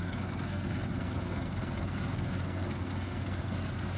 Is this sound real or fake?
fake